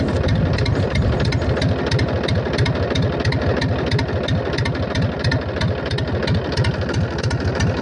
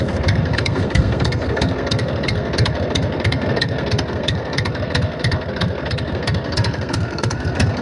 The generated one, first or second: second